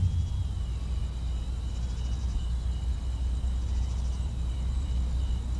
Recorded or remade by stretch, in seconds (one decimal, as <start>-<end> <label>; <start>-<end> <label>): 0.0-2.2 recorded; 2.2-5.0 remade; 5.0-5.6 recorded